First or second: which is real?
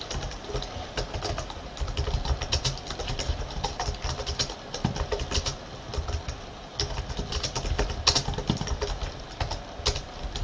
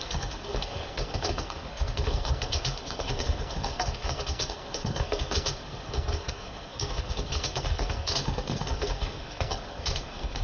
first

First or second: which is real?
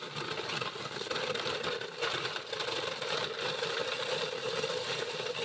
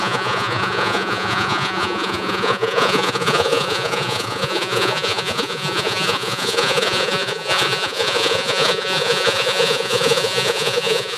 first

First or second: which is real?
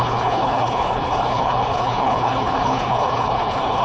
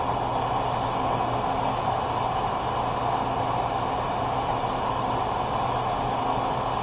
second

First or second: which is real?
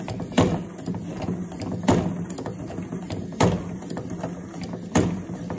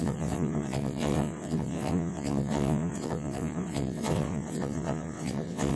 first